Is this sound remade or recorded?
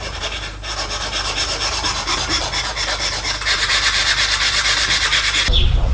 remade